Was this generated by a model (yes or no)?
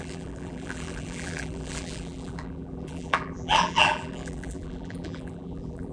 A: yes